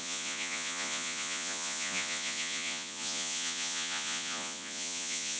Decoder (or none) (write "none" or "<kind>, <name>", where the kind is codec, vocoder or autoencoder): vocoder, Vocos